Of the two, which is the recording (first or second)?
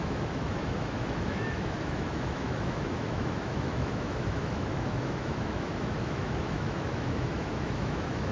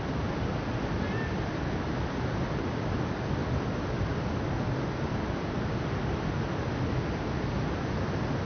second